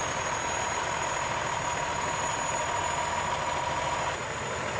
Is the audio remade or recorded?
recorded